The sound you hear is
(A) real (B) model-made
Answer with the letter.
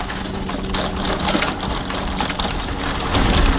A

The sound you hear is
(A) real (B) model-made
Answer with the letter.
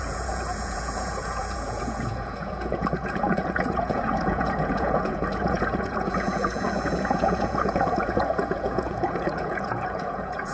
B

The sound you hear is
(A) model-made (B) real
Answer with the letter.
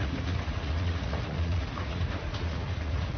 A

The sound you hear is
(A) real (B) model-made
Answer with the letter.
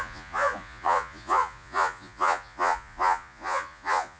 B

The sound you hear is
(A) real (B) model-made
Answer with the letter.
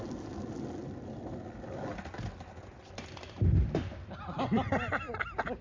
A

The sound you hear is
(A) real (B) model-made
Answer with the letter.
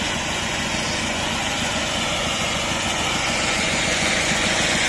B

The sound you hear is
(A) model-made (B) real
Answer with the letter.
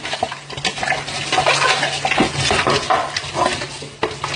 B